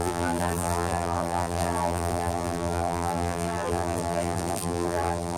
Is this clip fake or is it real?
fake